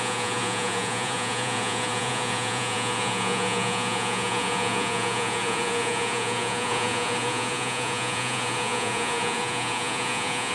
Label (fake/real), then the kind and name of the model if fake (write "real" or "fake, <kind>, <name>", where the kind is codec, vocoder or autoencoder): fake, vocoder, Vocos